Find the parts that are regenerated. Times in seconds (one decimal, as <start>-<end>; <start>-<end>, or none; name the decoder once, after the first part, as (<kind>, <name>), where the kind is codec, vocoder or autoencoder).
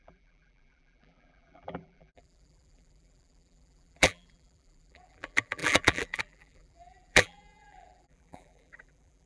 0.0-9.3 (vocoder, BigVGAN v2)